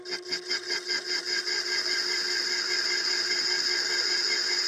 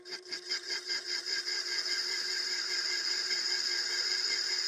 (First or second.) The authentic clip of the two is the first